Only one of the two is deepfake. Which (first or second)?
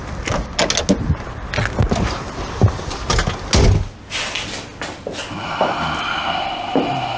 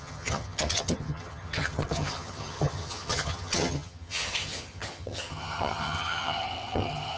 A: second